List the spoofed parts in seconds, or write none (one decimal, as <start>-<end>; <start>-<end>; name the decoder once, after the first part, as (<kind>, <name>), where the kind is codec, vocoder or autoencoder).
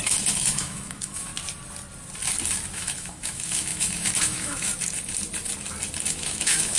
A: 0.0-1.3 (autoencoder, DAC-VAE); 2.7-4.7; 6.1-6.8